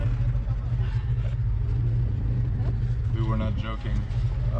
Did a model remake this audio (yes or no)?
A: no